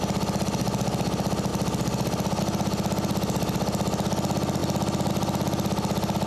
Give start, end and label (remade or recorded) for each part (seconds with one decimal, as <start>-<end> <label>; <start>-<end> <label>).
0.0-1.5 recorded; 1.5-2.4 remade; 2.4-6.3 recorded